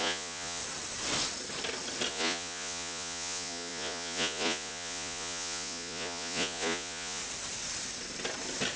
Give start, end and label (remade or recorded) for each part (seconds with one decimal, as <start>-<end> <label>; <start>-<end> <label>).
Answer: 0.0-0.6 remade; 0.6-2.1 recorded; 2.1-7.2 remade; 7.2-8.8 recorded